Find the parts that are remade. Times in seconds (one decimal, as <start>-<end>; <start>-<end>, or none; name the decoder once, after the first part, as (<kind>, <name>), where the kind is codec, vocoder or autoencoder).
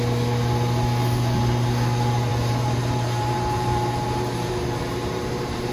2.3-5.7 (vocoder, BigVGAN v2)